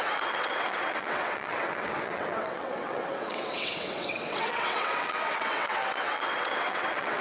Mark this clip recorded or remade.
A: remade